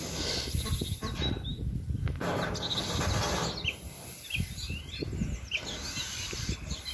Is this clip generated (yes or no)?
no